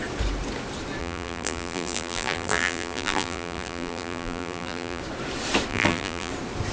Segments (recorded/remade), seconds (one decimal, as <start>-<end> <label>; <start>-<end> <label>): 0.0-1.0 recorded; 1.0-5.0 remade; 5.0-5.7 recorded; 5.7-6.3 remade; 6.3-6.7 recorded